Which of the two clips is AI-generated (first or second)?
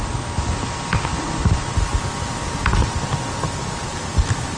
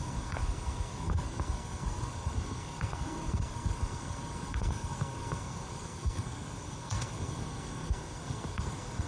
second